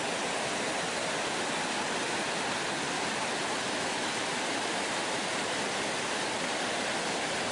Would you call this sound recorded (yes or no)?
yes